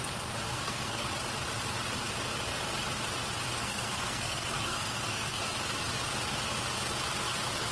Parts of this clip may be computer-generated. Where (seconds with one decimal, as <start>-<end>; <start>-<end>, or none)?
0.5-1.1; 3.6-5.4